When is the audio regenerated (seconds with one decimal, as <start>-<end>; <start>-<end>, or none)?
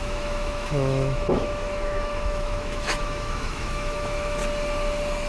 0.0-4.4